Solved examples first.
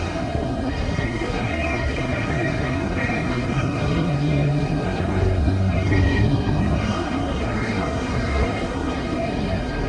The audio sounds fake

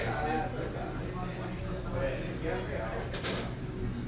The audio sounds real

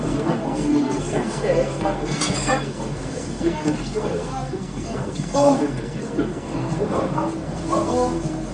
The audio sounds fake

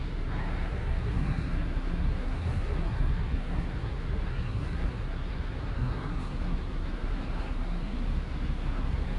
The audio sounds fake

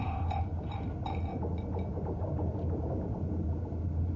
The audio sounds real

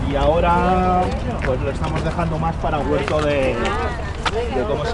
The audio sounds real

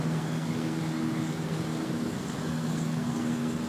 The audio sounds fake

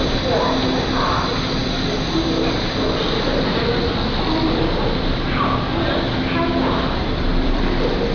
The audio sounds real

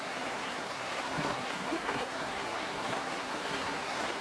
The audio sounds fake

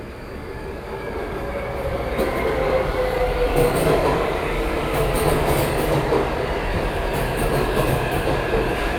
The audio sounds fake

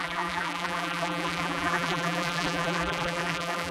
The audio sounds fake